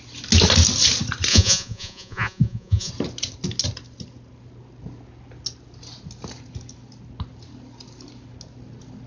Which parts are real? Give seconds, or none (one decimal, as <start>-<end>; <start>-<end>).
0.0-1.3; 2.9-9.1